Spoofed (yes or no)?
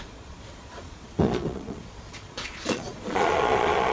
yes